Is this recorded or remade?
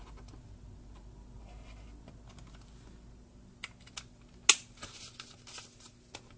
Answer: recorded